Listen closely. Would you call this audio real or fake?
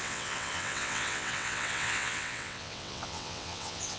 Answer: fake